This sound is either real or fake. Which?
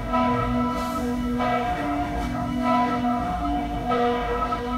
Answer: fake